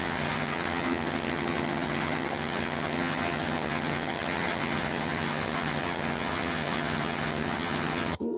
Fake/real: fake